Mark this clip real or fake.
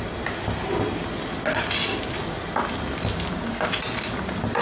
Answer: real